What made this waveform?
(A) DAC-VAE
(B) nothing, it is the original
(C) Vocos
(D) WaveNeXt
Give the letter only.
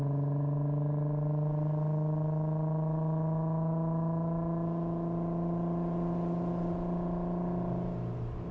B